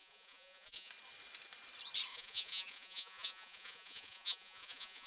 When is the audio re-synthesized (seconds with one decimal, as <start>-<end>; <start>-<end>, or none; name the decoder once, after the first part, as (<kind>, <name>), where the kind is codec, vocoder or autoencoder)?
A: 0.0-0.9 (vocoder, Vocos); 2.1-5.1